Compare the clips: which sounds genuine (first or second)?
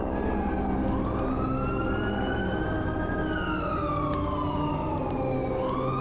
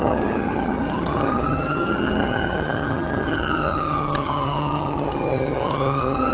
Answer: first